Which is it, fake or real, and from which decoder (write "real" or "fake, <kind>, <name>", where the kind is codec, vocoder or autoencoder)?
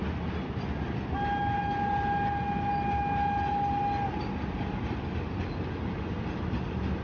real